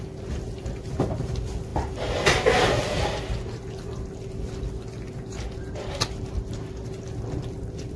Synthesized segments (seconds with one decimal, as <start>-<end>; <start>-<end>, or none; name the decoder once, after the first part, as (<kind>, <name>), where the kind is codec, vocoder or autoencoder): none